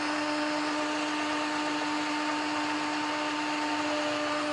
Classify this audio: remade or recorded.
recorded